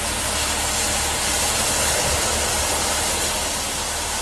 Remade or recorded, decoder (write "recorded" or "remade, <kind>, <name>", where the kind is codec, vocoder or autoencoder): recorded